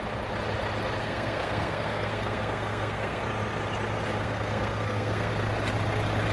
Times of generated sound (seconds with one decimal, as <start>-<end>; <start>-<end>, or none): 1.0-3.2; 4.2-5.3